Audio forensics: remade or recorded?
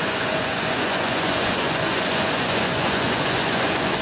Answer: remade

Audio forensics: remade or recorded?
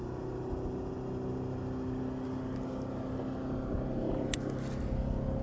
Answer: recorded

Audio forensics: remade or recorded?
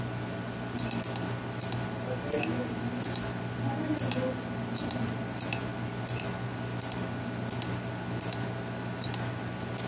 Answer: recorded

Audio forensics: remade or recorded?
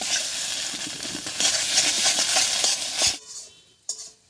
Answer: remade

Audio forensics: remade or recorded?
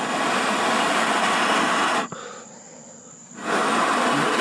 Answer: recorded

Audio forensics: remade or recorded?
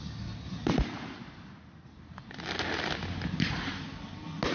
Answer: recorded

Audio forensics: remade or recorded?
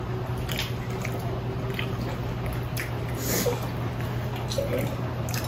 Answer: recorded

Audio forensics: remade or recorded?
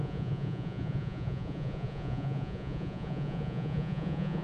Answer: remade